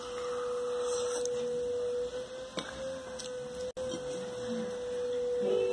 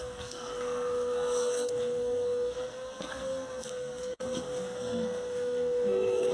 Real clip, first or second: first